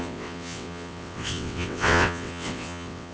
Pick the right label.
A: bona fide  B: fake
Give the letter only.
B